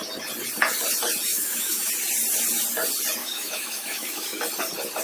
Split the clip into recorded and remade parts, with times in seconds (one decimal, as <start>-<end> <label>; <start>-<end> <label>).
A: 0.0-1.3 recorded; 1.3-1.9 remade; 1.9-3.2 recorded; 3.2-4.4 remade; 4.4-5.0 recorded